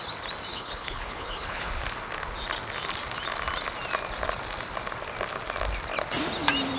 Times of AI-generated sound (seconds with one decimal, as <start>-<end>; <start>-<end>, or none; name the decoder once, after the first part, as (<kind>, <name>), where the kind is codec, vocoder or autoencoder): 0.5-1.7 (codec, HILCodec)